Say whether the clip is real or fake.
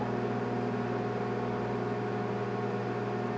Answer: real